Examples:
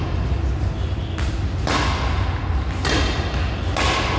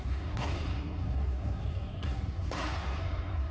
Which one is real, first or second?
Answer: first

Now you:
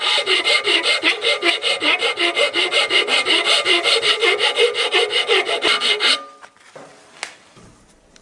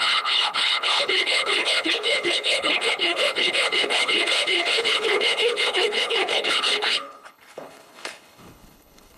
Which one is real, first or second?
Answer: first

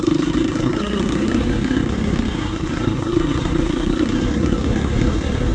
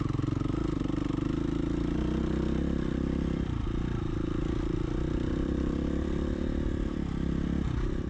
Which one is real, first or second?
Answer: second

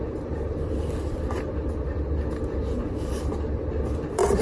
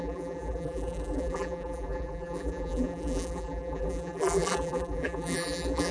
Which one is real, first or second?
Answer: first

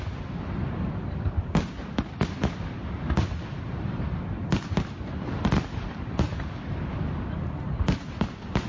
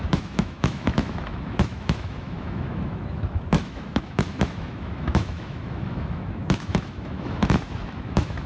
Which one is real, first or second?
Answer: first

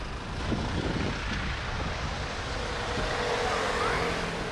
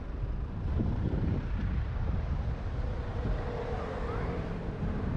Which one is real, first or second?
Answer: first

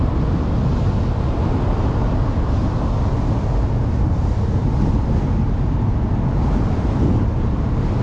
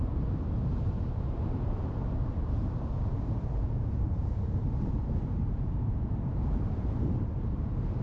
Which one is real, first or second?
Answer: first